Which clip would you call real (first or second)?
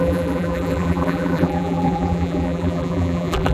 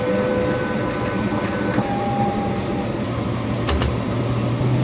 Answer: second